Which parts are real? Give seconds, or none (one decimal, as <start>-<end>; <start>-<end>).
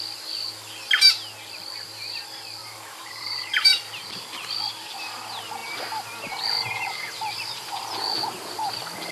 0.0-2.6; 4.5-9.1